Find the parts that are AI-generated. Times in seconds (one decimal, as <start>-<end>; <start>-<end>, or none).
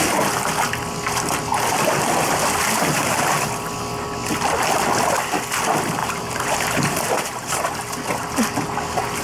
6.0-7.4